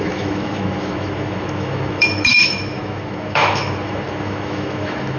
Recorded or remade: remade